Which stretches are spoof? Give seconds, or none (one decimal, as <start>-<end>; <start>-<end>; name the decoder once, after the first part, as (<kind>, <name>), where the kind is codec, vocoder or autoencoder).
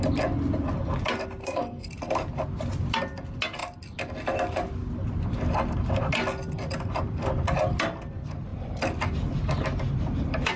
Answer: 1.4-1.9 (codec, SNAC)